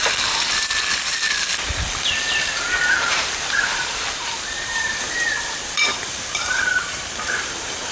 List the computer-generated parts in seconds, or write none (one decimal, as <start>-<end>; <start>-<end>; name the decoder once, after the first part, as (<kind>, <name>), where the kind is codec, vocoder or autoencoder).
3.1-7.9 (vocoder, BigVGAN v2)

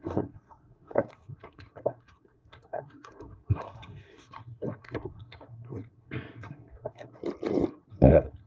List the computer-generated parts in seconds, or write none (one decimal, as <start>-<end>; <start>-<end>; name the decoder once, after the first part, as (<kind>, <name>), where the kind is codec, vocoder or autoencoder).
0.0-7.2 (codec, SNAC); 7.9-8.5

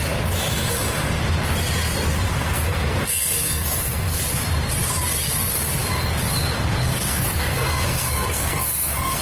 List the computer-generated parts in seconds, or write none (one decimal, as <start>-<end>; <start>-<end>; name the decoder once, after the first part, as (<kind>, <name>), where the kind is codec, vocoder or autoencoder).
2.3-4.2 (codec, SNAC); 6.9-9.2

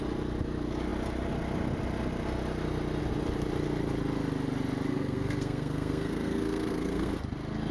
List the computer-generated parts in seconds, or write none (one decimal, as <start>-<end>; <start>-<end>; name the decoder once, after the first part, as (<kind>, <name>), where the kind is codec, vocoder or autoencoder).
4.9-7.1 (codec, SNAC)

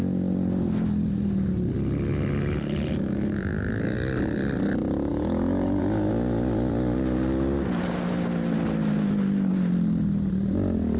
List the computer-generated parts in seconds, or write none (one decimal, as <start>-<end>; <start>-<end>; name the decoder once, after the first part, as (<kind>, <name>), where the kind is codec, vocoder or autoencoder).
5.1-5.8 (codec, DAC)

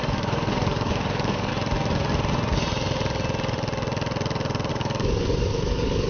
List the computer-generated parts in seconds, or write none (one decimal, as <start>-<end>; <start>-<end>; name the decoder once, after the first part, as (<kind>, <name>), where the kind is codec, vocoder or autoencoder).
0.0-1.5 (codec, DAC); 4.7-6.1